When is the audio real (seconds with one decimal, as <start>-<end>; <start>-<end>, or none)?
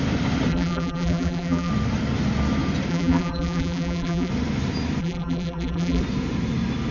0.0-0.5; 1.7-2.9; 4.3-5.0; 6.0-6.9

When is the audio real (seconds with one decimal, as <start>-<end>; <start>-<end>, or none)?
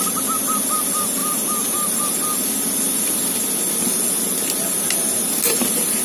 0.0-1.2; 2.0-5.0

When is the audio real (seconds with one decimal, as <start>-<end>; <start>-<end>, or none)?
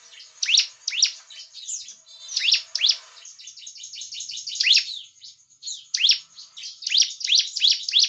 0.0-8.1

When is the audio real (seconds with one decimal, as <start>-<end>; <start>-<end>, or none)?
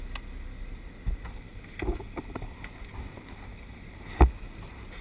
0.0-5.0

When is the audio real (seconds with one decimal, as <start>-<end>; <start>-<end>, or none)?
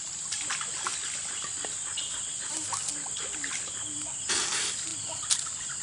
0.9-4.3; 4.9-5.8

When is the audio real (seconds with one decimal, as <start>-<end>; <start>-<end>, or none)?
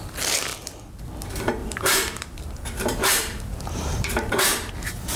0.0-1.6; 4.7-5.2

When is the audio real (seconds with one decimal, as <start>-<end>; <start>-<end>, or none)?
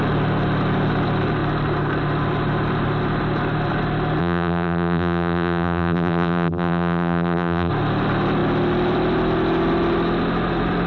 0.0-4.2; 7.7-10.9